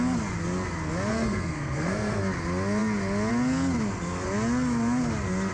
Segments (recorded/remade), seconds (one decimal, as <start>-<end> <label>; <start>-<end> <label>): 0.0-1.1 recorded; 1.1-2.2 remade; 2.2-5.5 recorded